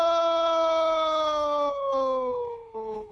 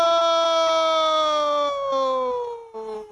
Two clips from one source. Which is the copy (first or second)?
first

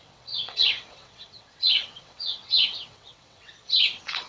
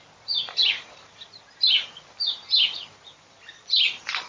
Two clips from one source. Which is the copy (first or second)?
first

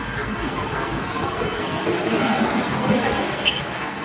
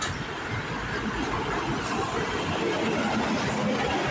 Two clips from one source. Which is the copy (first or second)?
first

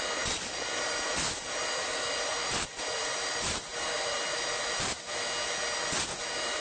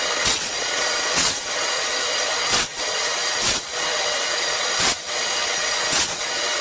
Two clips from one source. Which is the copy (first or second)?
second